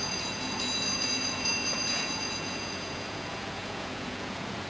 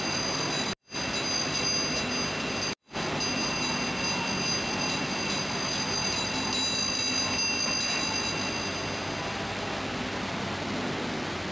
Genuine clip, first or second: second